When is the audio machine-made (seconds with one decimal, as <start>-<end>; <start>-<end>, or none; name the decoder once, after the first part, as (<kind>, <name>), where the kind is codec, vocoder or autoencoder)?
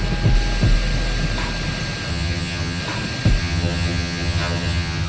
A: 2.1-2.8 (vocoder, HiFi-GAN); 3.4-5.1